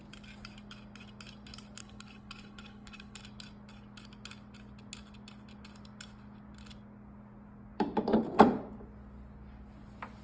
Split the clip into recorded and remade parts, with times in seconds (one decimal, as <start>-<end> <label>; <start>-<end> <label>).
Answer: 0.0-1.8 recorded; 1.8-3.2 remade; 3.2-10.2 recorded